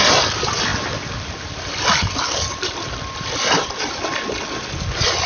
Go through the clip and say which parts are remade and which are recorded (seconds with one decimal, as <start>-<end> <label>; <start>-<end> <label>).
0.0-0.7 recorded; 0.7-3.8 remade; 3.8-5.3 recorded